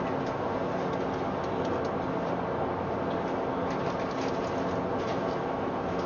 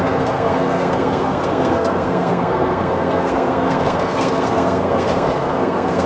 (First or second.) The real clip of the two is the first